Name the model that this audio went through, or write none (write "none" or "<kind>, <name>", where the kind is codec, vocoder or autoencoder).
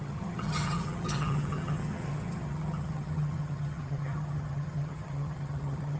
vocoder, HiFi-GAN